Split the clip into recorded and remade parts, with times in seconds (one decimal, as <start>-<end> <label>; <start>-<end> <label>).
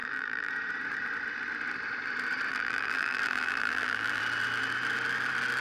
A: 0.0-0.5 remade; 0.5-2.5 recorded; 2.5-4.2 remade; 4.2-5.6 recorded